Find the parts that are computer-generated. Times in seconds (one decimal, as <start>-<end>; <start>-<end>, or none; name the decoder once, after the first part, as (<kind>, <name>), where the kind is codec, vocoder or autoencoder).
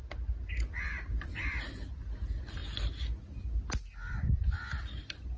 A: none